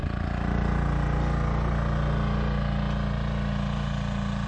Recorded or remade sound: recorded